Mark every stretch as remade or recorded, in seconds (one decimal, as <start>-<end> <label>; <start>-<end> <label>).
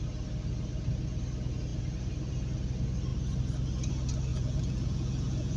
0.0-4.3 recorded; 4.3-5.6 remade